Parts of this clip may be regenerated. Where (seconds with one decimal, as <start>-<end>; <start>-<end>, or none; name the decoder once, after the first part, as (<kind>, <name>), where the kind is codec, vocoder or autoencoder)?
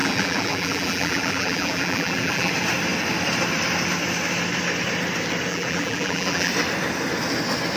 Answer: 0.0-2.5 (vocoder, BigVGAN v2); 5.5-6.5